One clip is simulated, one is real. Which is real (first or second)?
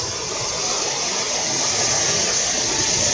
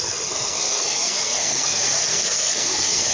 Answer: first